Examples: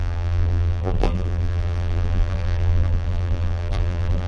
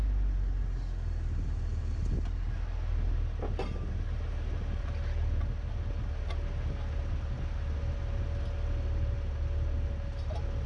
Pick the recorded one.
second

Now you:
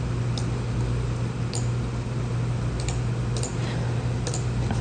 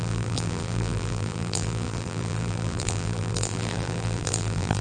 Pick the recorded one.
first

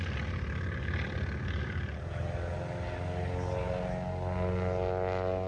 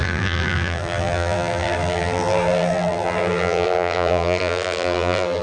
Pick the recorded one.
first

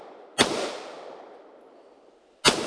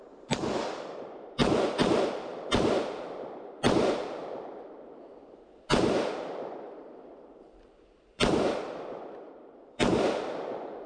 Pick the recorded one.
first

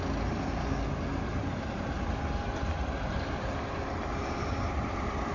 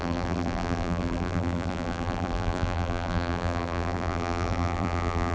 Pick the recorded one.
first